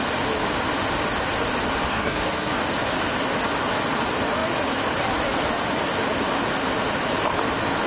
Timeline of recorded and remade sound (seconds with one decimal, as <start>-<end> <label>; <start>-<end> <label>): 0.0-1.9 recorded; 1.9-2.5 remade; 2.5-7.9 recorded